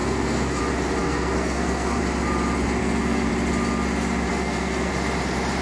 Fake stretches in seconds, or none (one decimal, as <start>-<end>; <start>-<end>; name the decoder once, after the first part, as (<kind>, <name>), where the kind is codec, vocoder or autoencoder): 0.0-0.6 (codec, SNAC); 1.0-2.0; 2.8-3.3; 4.3-4.9